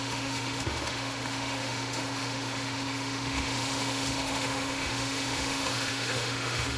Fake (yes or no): yes